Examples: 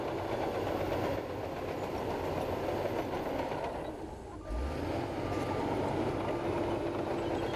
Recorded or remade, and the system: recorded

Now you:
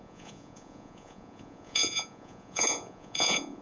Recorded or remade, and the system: remade, vocoder, Vocos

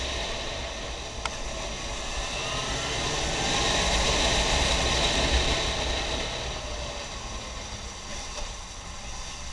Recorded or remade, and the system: recorded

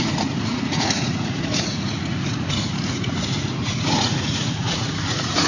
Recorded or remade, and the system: remade, vocoder, Vocos